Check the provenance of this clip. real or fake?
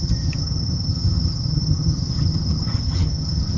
fake